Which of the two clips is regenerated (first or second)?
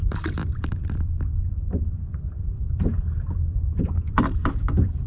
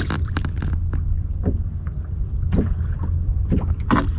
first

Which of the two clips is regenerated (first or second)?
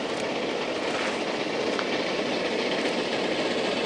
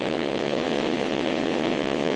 second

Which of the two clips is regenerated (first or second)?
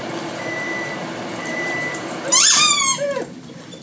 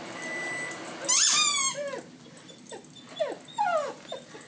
first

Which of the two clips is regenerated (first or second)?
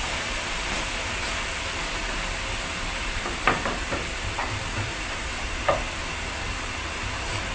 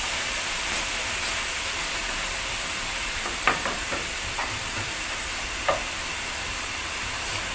second